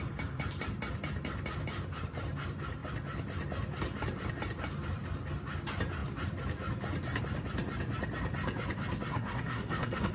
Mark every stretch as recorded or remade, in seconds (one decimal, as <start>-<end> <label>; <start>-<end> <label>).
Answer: 0.0-9.1 recorded; 9.1-10.1 remade